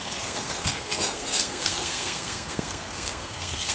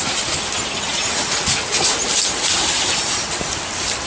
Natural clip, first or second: second